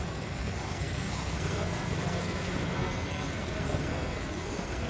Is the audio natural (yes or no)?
no